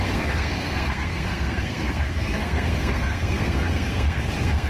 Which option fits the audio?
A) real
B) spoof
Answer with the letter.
B